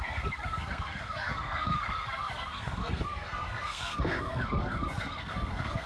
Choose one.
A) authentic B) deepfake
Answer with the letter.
B